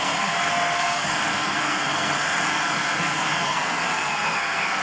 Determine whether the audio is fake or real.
fake